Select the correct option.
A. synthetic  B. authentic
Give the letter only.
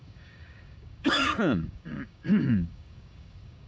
A